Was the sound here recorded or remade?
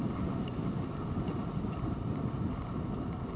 recorded